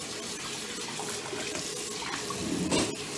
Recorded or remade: recorded